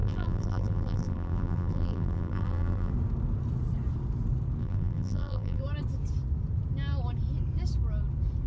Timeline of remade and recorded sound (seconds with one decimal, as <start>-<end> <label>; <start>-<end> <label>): 0.0-2.9 remade; 2.9-4.6 recorded; 4.6-5.6 remade; 5.6-8.5 recorded